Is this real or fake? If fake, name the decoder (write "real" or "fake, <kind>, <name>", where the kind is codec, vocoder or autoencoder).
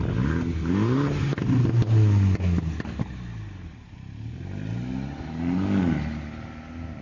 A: real